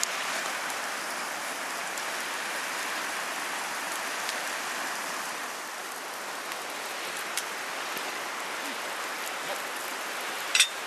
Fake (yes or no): no